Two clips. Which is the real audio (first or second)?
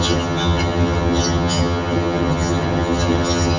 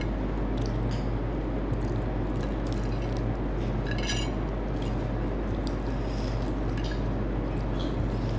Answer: second